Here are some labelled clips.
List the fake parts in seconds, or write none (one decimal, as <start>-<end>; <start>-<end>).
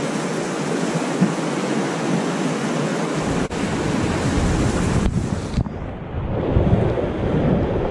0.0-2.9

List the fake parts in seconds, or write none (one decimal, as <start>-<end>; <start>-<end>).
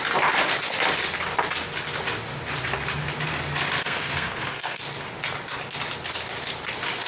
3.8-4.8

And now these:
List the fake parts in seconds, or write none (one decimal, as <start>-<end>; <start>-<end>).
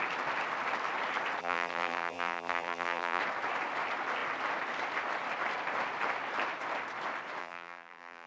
1.4-3.2; 7.4-8.3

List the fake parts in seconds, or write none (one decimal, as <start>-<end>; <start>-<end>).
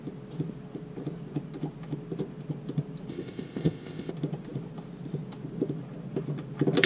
3.1-4.1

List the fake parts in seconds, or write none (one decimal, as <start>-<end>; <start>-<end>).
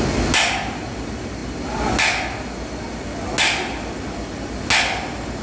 none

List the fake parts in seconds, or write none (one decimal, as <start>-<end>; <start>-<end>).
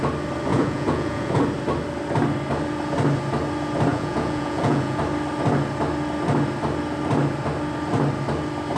0.5-1.4; 3.9-5.0